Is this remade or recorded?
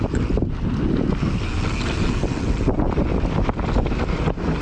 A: recorded